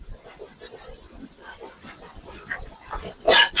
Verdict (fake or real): real